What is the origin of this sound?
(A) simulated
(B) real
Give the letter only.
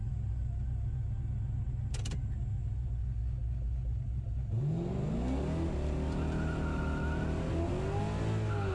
B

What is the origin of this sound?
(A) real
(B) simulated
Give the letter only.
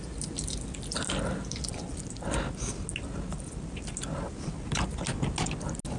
A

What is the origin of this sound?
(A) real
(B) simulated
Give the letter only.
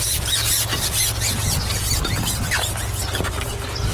A